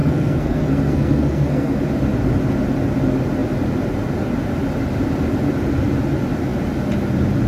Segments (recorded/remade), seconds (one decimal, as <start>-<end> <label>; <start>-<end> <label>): 0.0-1.8 remade; 1.8-7.5 recorded